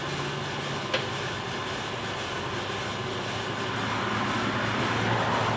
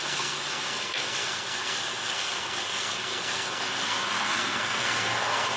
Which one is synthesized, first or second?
second